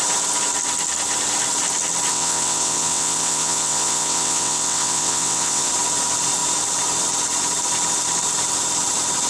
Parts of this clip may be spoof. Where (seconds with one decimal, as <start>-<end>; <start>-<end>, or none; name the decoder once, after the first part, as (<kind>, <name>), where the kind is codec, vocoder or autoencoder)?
2.1-5.7 (vocoder, WaveNeXt)